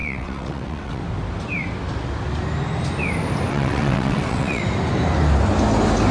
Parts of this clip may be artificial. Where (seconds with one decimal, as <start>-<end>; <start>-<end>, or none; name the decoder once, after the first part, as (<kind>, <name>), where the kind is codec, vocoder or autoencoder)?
0.0-1.0 (vocoder, WaveNeXt); 3.5-4.6

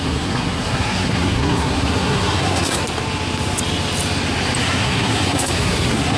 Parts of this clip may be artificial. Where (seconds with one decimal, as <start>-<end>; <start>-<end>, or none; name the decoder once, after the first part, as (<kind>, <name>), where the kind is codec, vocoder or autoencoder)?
0.0-2.8 (codec, SNAC); 4.6-6.2

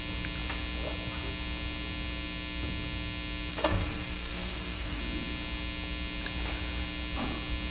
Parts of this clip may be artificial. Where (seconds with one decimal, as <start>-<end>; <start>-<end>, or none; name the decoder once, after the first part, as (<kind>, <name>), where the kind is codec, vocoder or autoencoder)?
3.5-5.0 (codec, SNAC)

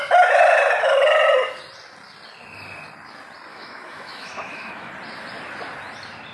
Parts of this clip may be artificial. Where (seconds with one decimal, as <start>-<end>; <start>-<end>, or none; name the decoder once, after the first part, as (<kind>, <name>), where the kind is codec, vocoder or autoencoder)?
3.5-4.9 (autoencoder, DAC-VAE)

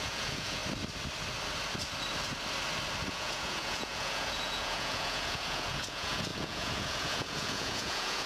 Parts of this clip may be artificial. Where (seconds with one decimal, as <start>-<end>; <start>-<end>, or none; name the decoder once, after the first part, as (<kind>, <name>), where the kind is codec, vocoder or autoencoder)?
0.0-0.6 (vocoder, Vocos); 3.1-8.3

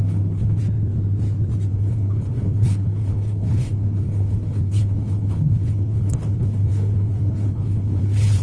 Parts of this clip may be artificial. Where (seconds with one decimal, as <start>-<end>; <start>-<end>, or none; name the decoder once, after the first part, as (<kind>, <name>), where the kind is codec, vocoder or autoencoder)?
0.0-0.6 (codec, HILCodec); 1.7-8.4

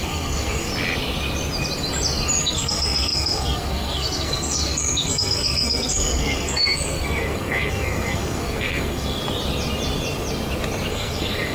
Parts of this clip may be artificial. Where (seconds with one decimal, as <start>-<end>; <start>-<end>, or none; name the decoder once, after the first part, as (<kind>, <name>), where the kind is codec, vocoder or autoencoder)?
0.0-0.7 (codec, SNAC); 2.4-9.2; 10.9-11.5